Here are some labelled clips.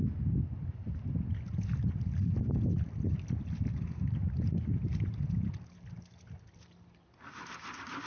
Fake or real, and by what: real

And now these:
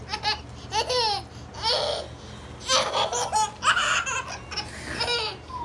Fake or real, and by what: real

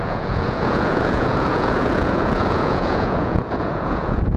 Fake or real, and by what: fake, vocoder, Vocos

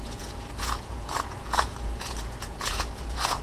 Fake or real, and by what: fake, vocoder, Vocos